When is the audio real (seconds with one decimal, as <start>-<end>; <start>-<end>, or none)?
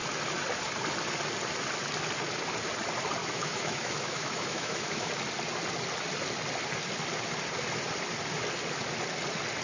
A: 0.0-3.2; 5.1-9.6